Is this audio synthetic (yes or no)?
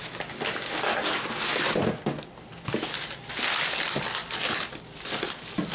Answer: no